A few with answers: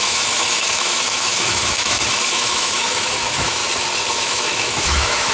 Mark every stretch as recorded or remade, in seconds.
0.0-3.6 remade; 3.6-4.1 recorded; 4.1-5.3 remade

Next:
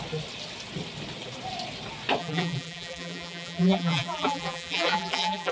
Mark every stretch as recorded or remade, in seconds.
0.0-2.2 recorded; 2.2-5.5 remade

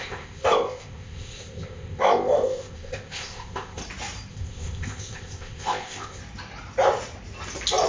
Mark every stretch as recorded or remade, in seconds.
0.0-3.8 remade; 3.8-4.3 recorded; 4.3-6.2 remade; 6.2-7.9 recorded

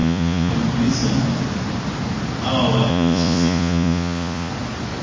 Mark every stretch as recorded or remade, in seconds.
0.0-0.5 remade; 0.5-2.9 recorded; 2.9-4.5 remade; 4.5-5.0 recorded